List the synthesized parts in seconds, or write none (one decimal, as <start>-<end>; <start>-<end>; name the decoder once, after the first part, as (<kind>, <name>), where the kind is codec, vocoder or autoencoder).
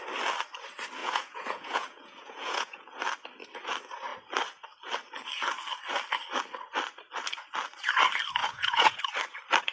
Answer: 1.0-3.0 (vocoder, Vocos); 8.4-9.0